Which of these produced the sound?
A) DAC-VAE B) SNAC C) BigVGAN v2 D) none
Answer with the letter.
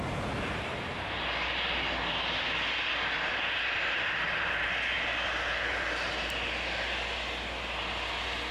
D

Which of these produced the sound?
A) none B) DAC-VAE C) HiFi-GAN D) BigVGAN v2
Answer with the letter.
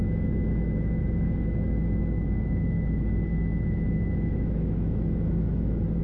B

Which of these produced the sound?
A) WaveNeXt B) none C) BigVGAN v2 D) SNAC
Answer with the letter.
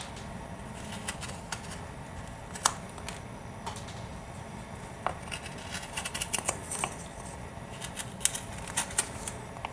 B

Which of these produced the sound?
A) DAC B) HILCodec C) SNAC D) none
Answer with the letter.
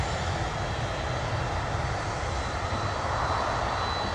D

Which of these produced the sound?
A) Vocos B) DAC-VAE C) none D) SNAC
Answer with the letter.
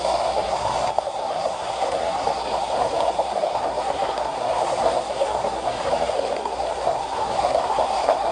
D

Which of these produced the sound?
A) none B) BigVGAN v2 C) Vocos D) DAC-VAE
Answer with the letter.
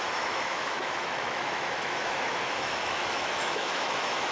D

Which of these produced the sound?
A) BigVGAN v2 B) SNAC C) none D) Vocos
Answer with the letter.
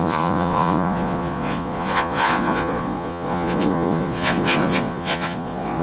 D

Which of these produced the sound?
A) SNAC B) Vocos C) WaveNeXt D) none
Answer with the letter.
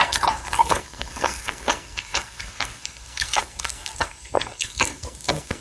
A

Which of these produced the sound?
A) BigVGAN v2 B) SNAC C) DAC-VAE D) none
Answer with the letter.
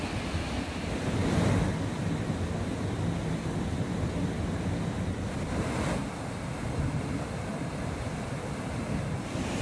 D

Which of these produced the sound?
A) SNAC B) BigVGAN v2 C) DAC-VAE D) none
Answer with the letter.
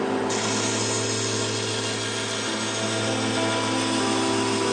D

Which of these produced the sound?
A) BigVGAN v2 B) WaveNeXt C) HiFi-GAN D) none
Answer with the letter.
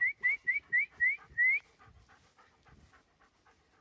D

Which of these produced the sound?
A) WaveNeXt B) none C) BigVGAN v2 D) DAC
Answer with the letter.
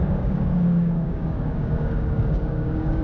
D